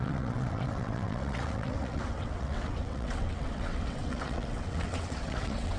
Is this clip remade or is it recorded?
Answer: remade